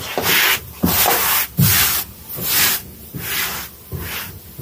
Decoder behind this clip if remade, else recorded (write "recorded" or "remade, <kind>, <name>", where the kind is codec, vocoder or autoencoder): recorded